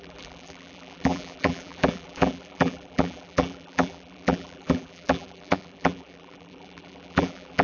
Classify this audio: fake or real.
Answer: fake